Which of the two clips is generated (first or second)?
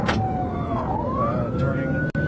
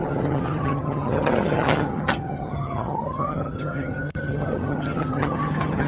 second